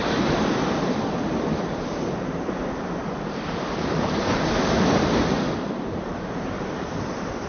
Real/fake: fake